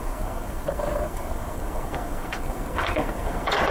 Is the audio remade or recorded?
remade